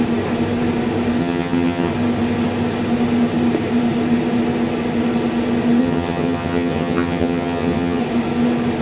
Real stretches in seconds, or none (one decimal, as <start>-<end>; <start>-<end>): 0.0-1.2; 1.9-5.8; 8.0-8.8